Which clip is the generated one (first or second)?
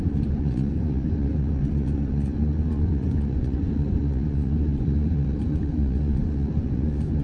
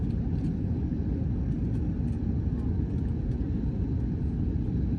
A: first